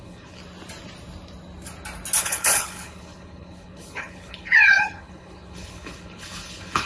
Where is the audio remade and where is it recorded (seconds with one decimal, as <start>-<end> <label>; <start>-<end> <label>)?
0.0-0.4 remade; 0.4-2.2 recorded; 2.2-6.9 remade